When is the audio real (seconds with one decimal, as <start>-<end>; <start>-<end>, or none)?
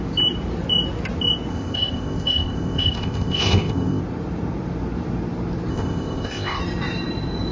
0.0-1.5; 4.0-5.7; 6.6-7.5